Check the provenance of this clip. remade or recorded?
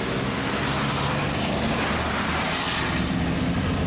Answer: recorded